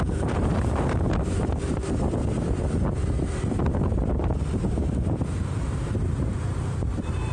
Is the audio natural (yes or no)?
no